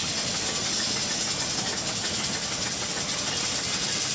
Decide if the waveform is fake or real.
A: real